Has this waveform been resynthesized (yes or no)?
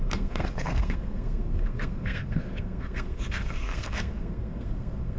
yes